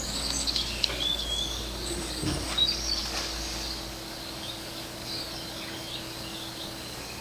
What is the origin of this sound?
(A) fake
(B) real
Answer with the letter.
A